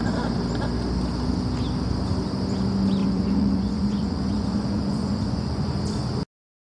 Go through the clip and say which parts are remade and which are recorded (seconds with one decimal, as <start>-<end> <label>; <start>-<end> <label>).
0.0-3.0 recorded; 3.0-5.8 remade; 5.8-6.6 recorded